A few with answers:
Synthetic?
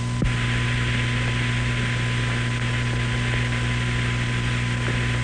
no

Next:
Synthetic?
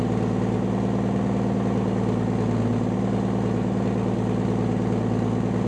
no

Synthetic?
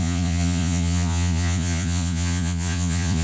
yes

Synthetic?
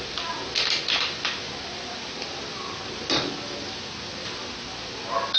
no